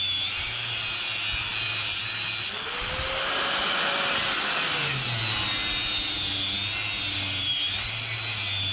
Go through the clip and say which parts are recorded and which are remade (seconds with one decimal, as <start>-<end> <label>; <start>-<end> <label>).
0.0-8.7 recorded